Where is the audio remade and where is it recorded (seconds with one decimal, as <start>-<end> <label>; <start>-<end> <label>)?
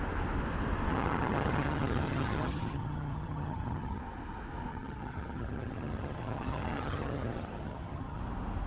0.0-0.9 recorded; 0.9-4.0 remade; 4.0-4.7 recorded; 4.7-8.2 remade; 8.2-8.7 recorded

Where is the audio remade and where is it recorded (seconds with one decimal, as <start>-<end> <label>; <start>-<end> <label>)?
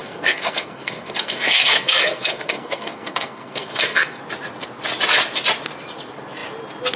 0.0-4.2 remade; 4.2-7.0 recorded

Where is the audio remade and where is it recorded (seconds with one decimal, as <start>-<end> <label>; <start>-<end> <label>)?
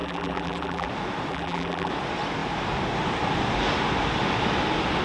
0.0-0.9 remade; 0.9-1.3 recorded; 1.3-1.9 remade; 1.9-5.0 recorded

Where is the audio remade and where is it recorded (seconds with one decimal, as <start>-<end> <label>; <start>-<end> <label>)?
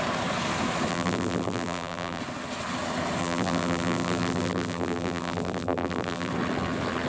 0.0-0.9 recorded; 0.9-2.2 remade; 2.2-3.2 recorded; 3.2-6.3 remade; 6.3-7.1 recorded